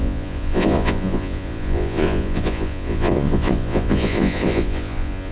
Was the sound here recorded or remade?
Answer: remade